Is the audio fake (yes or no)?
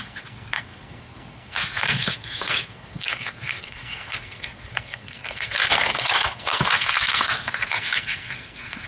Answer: yes